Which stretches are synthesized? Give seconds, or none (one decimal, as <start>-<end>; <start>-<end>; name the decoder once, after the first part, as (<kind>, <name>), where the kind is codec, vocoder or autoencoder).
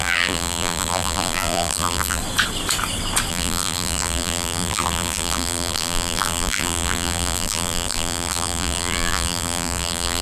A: 0.0-2.2 (vocoder, BigVGAN v2); 3.3-10.2